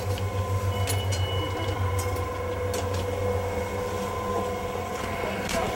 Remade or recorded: recorded